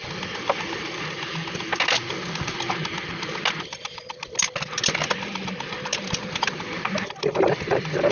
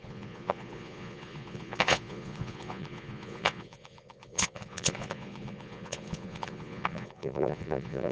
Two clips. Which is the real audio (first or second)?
first